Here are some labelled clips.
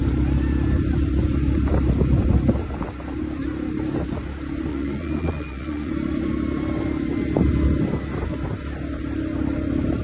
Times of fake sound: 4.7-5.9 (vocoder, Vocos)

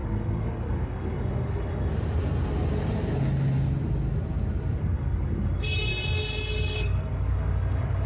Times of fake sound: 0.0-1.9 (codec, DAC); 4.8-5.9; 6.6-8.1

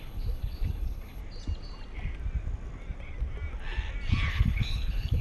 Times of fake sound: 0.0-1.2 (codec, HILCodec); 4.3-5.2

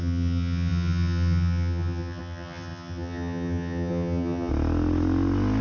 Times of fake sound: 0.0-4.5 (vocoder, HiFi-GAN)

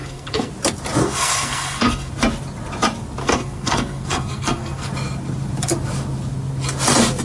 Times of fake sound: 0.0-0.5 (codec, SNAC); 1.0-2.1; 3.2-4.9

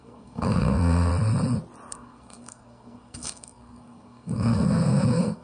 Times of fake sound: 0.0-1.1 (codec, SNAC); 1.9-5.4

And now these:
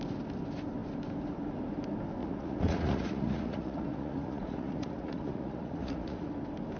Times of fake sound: 2.2-6.3 (vocoder, Vocos)

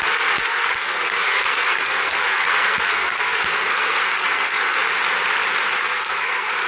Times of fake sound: 0.0-4.8 (codec, SNAC); 5.8-6.7